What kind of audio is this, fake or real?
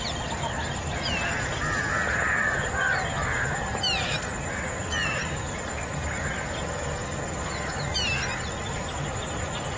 real